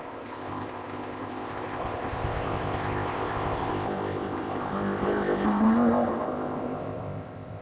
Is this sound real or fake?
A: fake